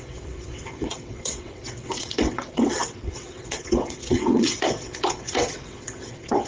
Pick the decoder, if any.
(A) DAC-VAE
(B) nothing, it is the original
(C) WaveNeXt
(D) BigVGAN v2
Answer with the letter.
C